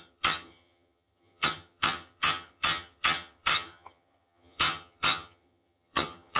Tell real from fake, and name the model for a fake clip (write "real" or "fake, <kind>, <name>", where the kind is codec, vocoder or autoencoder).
fake, vocoder, HiFi-GAN